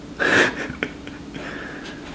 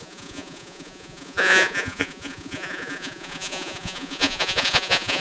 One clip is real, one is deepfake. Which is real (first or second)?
first